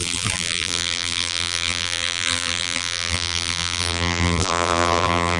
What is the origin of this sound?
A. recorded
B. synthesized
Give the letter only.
B